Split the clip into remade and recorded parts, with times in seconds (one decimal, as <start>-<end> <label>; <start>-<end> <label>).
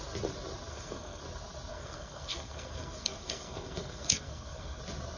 0.0-0.7 recorded; 0.7-1.2 remade; 1.2-1.7 recorded; 1.7-4.8 remade; 4.8-5.2 recorded